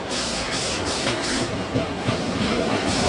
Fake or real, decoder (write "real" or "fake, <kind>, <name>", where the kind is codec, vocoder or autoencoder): fake, codec, SNAC